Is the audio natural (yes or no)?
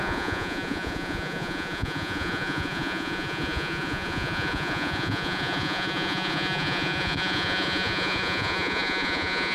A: no